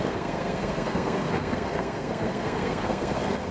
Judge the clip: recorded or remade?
remade